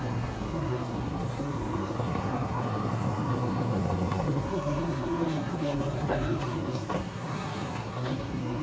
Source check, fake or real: fake